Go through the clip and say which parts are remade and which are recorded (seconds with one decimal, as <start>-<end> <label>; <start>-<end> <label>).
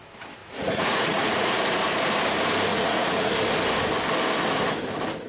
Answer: 0.0-0.4 recorded; 0.4-1.6 remade; 1.6-2.7 recorded; 2.7-3.3 remade; 3.3-5.3 recorded